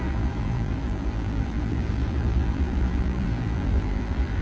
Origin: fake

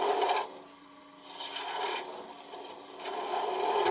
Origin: real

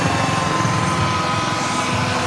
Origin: real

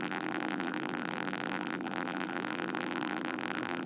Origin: fake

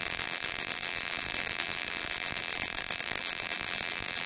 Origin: fake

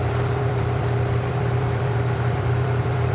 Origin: fake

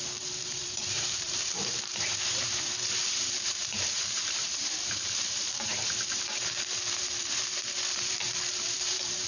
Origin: fake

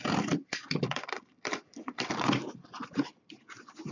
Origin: fake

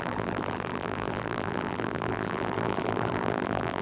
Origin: fake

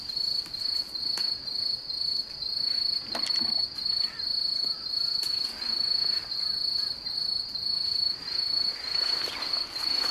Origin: real